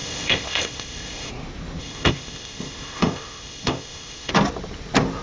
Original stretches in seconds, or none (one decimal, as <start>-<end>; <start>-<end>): 1.3-1.8; 4.3-5.2